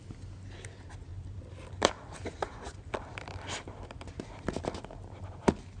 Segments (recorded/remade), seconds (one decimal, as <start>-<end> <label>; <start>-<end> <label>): 0.0-1.1 recorded; 1.1-4.6 remade; 4.6-5.8 recorded

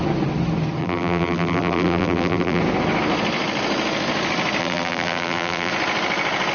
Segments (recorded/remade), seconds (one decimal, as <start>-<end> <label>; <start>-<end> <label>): 0.0-0.8 recorded; 0.8-2.6 remade; 2.6-4.6 recorded; 4.6-5.7 remade; 5.7-6.5 recorded

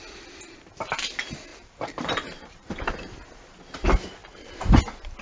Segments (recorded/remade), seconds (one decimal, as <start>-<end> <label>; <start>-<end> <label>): 0.0-1.5 recorded; 1.5-2.9 remade; 2.9-4.2 recorded; 4.2-4.8 remade; 4.8-5.2 recorded

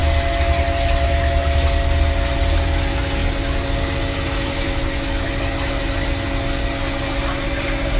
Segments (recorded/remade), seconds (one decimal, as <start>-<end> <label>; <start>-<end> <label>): 0.0-8.0 recorded

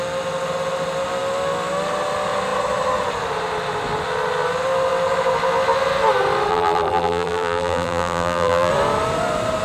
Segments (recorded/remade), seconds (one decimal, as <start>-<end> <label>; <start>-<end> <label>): 0.0-6.5 recorded; 6.5-8.7 remade; 8.7-9.6 recorded

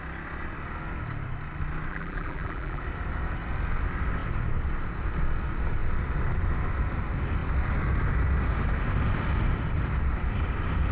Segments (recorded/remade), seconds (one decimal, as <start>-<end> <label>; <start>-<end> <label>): 0.0-1.9 recorded; 1.9-2.8 remade; 2.8-10.9 recorded

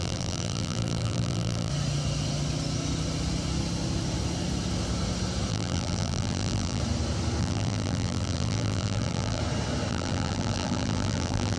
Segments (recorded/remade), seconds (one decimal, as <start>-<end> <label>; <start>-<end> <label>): 0.0-1.7 remade; 1.7-5.5 recorded; 5.5-6.8 remade; 6.8-7.4 recorded; 7.4-9.4 remade; 9.4-9.9 recorded; 9.9-11.6 remade

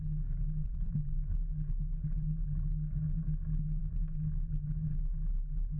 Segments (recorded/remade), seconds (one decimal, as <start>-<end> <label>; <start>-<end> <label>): 0.0-0.6 recorded; 0.6-1.3 remade; 1.3-5.8 recorded